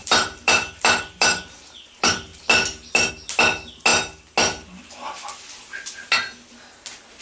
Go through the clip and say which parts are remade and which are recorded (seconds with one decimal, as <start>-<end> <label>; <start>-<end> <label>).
0.0-1.4 remade; 1.4-7.2 recorded